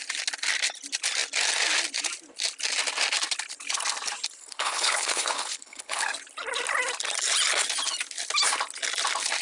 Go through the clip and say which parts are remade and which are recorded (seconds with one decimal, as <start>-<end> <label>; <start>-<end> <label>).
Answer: 0.0-4.4 recorded; 4.4-6.0 remade; 6.0-9.4 recorded